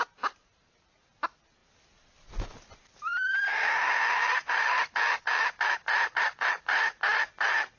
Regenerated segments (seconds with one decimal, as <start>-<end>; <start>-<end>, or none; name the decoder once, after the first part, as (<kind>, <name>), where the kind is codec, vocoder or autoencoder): none